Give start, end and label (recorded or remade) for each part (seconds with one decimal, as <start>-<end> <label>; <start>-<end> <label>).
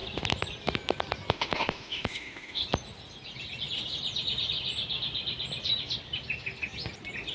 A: 0.0-1.3 recorded; 1.3-2.6 remade; 2.6-7.3 recorded